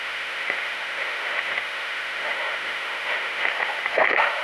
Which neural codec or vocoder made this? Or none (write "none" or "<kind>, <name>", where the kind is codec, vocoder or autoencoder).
autoencoder, DAC-VAE